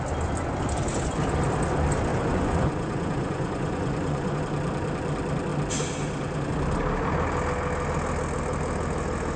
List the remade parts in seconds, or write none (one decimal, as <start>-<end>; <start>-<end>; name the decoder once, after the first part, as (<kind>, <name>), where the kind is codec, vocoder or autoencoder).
2.1-4.4 (vocoder, Vocos)